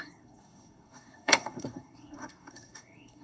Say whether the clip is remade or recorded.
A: remade